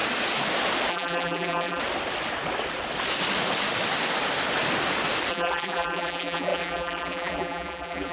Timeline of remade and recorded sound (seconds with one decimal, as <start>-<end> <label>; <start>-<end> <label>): 0.0-0.9 recorded; 0.9-1.8 remade; 1.8-5.3 recorded; 5.3-8.1 remade